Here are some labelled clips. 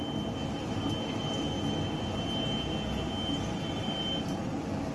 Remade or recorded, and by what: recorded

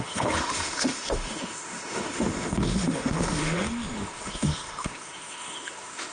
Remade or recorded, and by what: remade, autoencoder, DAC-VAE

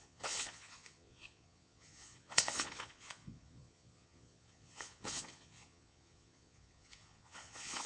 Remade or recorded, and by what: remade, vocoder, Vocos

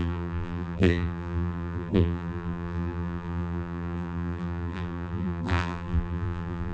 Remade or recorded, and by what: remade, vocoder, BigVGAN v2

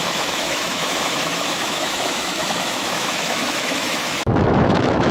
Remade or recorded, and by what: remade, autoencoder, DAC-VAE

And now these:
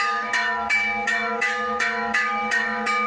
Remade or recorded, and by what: remade, autoencoder, DAC-VAE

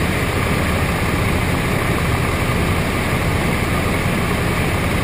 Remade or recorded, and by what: recorded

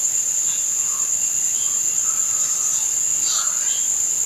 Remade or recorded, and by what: recorded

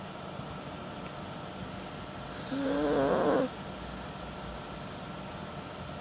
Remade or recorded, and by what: recorded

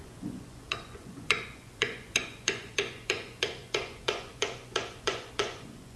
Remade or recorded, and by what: remade, vocoder, Vocos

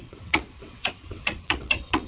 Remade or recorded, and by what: remade, vocoder, WaveNeXt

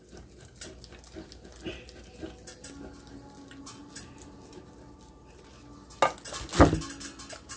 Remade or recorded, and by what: recorded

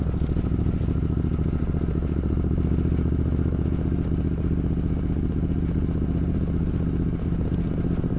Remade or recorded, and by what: recorded